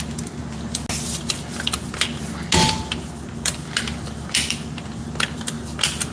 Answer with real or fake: real